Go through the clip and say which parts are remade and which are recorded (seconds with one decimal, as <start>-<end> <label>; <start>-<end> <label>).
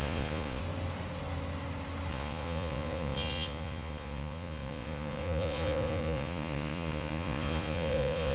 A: 0.0-0.6 remade; 0.6-2.1 recorded; 2.1-8.3 remade